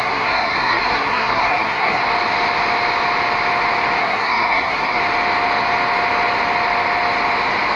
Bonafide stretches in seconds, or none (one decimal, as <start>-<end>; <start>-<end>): 2.0-4.0; 5.0-7.8